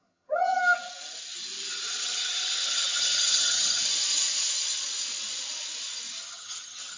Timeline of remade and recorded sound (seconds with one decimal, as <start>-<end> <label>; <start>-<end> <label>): 0.0-0.6 remade; 0.6-1.7 recorded; 1.7-3.8 remade; 3.8-6.2 recorded; 6.2-7.0 remade